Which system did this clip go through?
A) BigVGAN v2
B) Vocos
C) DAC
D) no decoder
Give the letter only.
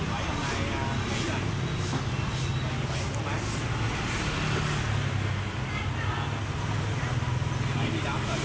D